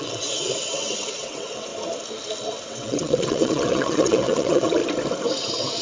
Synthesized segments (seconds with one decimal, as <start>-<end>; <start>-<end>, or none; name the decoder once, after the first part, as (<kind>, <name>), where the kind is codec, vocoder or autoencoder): 0.0-1.7 (vocoder, WaveNeXt); 2.6-4.8